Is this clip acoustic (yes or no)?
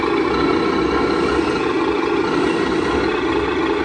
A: yes